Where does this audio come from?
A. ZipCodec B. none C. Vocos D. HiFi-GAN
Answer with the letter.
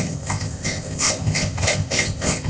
A